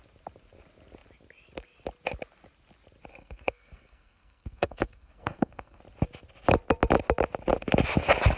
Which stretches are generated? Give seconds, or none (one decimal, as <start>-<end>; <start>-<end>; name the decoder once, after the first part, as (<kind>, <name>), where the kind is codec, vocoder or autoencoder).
3.1-5.8 (codec, SNAC)